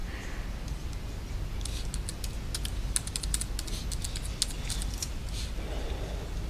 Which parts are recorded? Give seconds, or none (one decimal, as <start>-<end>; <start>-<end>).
0.0-6.5